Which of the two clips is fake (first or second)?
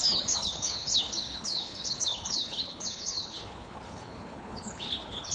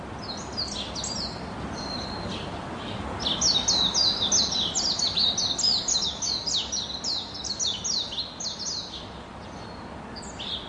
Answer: first